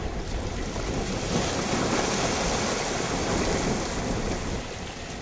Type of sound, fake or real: real